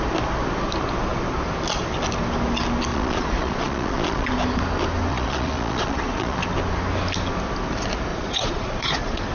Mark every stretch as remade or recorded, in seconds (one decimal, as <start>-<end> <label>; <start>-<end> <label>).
0.0-2.9 recorded; 2.9-4.3 remade; 4.3-5.1 recorded; 5.1-6.4 remade; 6.4-8.1 recorded; 8.1-9.3 remade